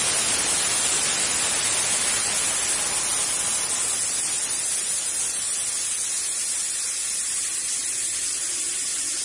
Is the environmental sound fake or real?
real